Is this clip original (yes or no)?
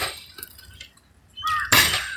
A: yes